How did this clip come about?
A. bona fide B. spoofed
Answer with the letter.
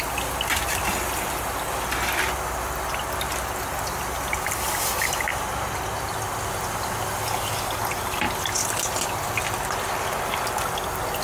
A